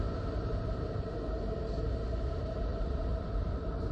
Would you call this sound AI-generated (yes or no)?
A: yes